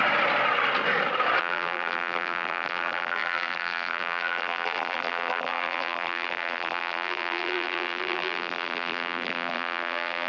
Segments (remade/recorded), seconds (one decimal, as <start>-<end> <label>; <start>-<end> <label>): 0.0-1.4 recorded; 1.4-10.3 remade